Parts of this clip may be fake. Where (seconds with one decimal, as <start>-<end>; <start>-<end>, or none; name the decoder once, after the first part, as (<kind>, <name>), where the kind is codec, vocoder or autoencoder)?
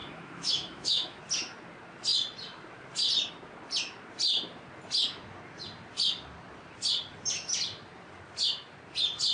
0.0-1.2 (autoencoder, DAC-VAE)